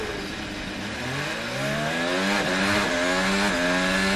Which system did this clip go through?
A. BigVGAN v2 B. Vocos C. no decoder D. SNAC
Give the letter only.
C